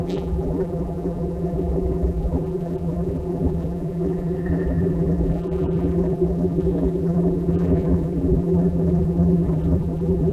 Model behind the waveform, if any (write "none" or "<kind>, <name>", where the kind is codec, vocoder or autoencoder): vocoder, BigVGAN v2